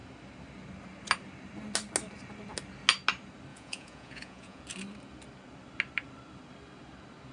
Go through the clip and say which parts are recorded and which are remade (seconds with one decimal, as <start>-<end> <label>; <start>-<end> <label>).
0.0-3.5 recorded; 3.5-4.6 remade; 4.6-7.3 recorded